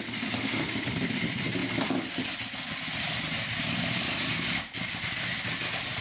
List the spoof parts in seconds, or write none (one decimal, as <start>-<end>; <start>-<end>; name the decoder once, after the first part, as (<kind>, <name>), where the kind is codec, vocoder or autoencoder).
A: none